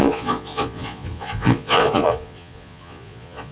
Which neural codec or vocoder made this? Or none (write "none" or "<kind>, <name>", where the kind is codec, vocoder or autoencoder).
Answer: vocoder, Vocos